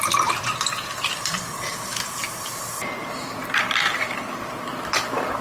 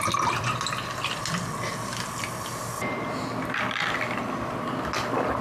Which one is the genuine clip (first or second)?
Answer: second